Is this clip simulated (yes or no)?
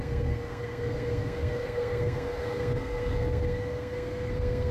yes